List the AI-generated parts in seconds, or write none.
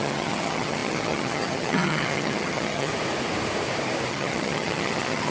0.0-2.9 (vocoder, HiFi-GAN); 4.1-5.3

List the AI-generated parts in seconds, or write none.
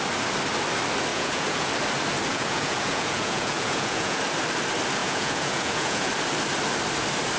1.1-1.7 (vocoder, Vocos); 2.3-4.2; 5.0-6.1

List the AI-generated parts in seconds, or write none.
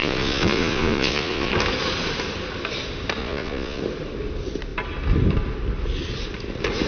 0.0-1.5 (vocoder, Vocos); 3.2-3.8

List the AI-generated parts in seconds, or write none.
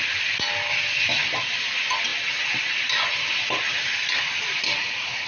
none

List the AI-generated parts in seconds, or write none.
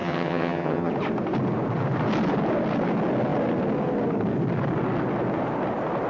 0.0-0.9 (vocoder, HiFi-GAN)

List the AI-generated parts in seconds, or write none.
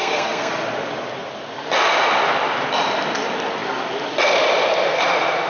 0.0-0.5 (codec, SNAC)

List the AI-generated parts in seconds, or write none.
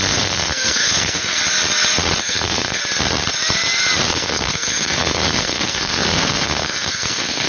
0.0-1.4 (codec, SNAC); 2.2-2.8; 4.1-7.5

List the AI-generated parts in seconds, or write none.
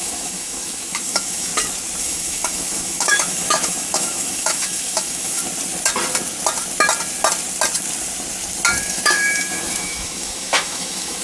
0.0-1.5 (autoencoder, DAC-VAE); 2.0-5.4; 8.8-11.2